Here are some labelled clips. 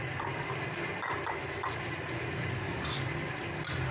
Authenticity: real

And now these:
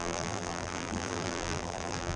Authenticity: fake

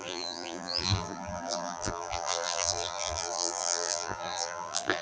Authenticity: fake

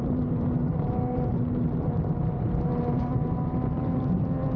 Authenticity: fake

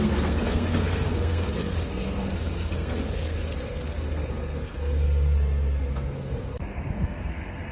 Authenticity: fake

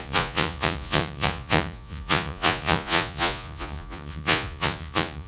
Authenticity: fake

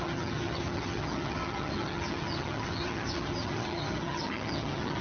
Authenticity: fake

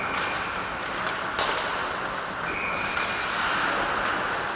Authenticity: real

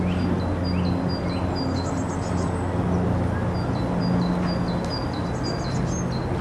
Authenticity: real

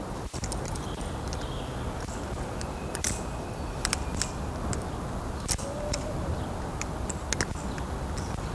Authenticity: real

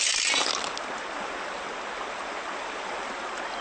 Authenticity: real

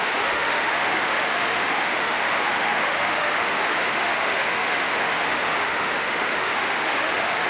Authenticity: fake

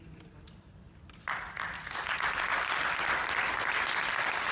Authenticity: real